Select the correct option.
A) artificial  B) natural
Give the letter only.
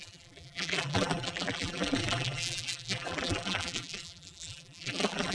A